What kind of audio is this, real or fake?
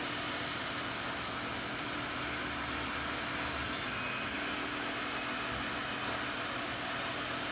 real